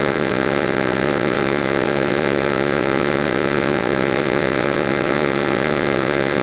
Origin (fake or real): fake